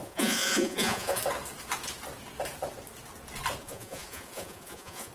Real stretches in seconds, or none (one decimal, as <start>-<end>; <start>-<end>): 1.2-3.6